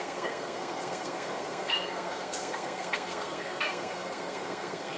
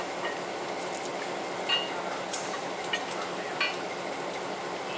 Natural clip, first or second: second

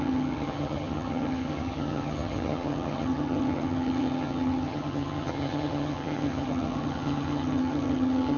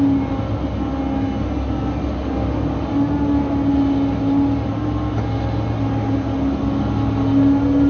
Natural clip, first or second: second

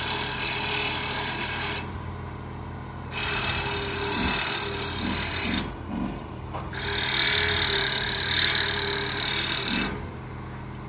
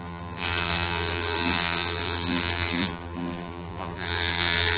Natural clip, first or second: first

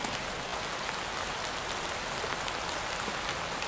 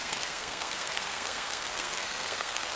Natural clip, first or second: first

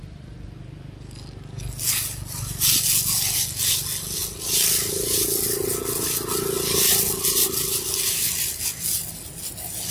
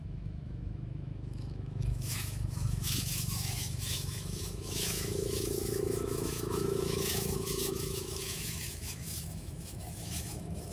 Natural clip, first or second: first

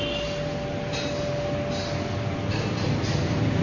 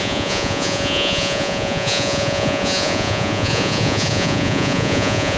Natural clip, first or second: first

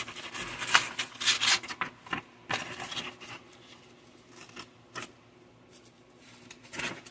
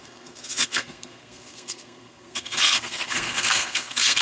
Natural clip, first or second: first